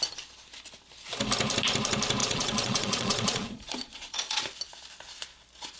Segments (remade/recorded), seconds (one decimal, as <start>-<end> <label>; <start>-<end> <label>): 0.0-2.2 recorded; 2.2-4.4 remade; 4.4-5.8 recorded